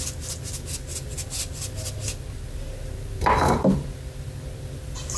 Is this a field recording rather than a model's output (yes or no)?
yes